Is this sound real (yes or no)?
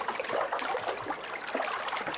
yes